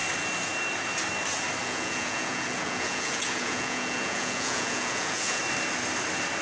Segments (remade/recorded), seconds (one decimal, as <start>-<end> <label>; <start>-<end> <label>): 0.0-1.6 recorded; 1.6-5.4 remade; 5.4-6.4 recorded